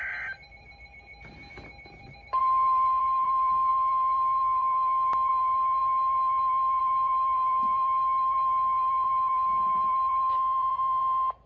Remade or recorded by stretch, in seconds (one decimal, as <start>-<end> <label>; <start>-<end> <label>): 0.0-11.5 remade